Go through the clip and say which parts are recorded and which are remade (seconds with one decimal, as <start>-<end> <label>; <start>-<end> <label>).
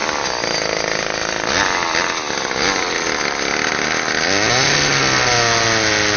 0.0-6.2 recorded